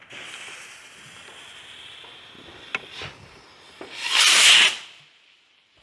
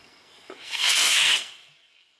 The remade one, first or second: second